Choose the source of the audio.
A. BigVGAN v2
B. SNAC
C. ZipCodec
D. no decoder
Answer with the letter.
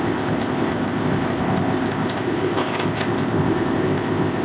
C